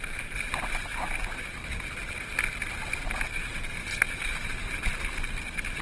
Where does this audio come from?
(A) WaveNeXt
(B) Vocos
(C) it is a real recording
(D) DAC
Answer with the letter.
C